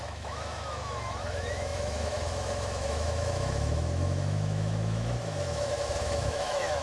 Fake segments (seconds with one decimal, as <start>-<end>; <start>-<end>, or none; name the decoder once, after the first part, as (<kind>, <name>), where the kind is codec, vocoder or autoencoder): 0.0-6.8 (autoencoder, DAC-VAE)